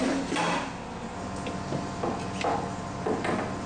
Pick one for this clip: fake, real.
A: real